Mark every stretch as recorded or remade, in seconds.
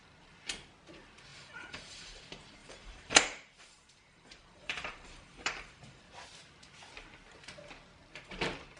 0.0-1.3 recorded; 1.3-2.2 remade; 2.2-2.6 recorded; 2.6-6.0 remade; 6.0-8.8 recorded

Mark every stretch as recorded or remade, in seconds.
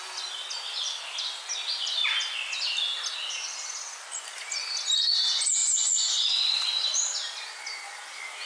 0.0-5.6 recorded; 5.6-6.5 remade; 6.5-8.5 recorded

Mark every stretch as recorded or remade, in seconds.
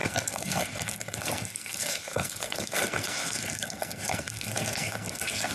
0.0-5.5 remade